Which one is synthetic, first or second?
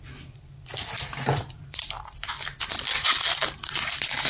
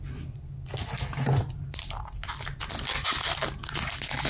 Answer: first